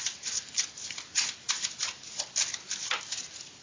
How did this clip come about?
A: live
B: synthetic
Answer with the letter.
A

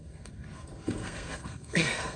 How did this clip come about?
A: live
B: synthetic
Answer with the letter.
B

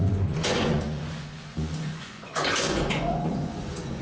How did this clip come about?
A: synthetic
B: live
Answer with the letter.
A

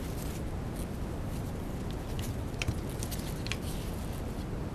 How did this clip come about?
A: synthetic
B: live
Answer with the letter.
B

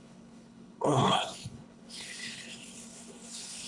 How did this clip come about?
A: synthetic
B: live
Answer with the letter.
A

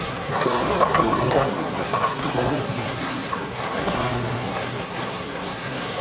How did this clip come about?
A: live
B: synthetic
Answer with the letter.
B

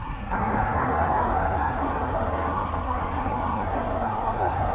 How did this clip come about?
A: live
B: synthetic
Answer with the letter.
B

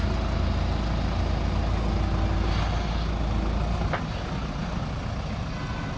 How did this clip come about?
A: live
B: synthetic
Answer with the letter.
A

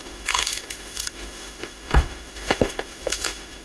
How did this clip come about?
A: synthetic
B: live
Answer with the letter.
A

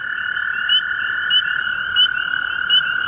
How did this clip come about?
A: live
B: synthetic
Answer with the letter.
A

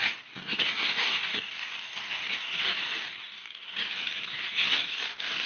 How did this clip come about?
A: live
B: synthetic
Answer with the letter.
B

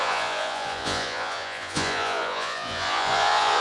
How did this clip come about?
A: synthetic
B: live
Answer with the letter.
A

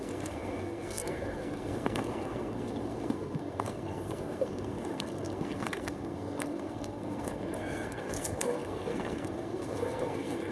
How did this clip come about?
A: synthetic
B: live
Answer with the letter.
A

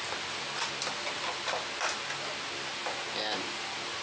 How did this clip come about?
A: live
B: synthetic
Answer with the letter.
A